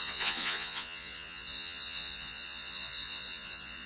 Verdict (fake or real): fake